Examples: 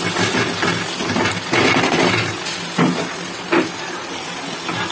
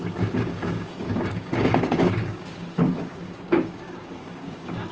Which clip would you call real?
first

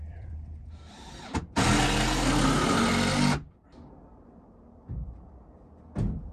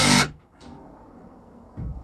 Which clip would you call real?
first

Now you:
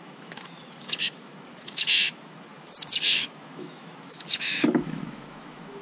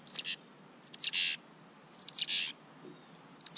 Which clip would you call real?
second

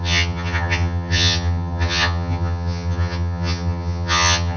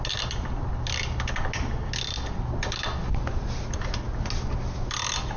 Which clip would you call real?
second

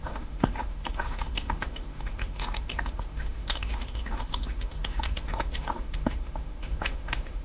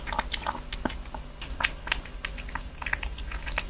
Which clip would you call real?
second